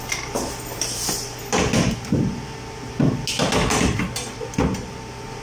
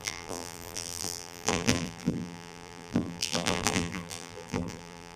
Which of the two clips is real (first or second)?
first